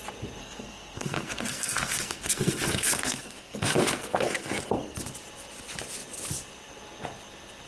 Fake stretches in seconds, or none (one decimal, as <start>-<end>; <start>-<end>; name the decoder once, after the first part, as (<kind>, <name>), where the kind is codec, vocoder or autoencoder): 0.4-5.0 (codec, SNAC)